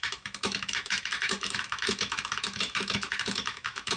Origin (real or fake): fake